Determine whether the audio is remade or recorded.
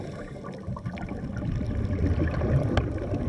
recorded